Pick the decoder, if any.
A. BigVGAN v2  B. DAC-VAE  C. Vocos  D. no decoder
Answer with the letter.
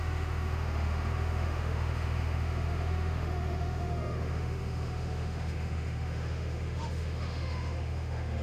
B